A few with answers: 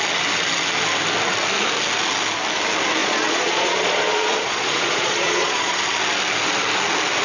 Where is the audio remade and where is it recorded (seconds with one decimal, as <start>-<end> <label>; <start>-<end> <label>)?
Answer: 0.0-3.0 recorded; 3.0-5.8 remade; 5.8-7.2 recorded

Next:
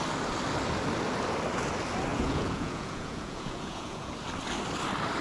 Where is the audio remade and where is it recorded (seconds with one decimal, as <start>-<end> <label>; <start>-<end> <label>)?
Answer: 0.0-2.1 recorded; 2.1-4.1 remade; 4.1-5.2 recorded

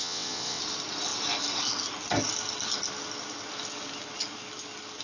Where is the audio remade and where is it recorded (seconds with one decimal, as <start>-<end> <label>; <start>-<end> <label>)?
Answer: 0.0-0.6 remade; 0.6-5.0 recorded